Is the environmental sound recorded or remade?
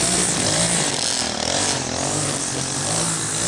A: recorded